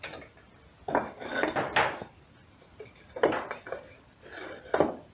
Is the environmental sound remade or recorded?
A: recorded